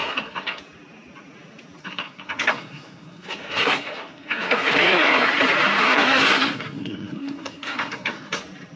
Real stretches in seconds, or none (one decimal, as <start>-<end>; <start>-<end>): 0.6-1.8; 5.3-5.8; 8.4-8.8